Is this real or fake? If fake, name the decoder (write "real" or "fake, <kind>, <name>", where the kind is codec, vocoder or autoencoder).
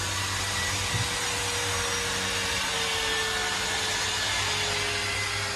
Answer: real